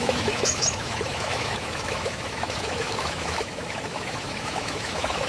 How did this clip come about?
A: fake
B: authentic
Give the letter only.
A